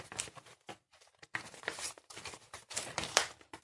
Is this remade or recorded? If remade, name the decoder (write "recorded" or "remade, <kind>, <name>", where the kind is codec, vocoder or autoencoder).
remade, vocoder, BigVGAN v2